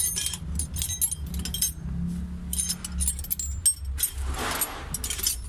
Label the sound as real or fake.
real